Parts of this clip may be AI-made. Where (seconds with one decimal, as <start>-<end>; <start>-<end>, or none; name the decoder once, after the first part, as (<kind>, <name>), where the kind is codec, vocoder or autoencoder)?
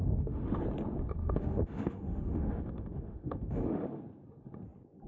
0.0-0.6 (autoencoder, DAC-VAE); 1.2-4.0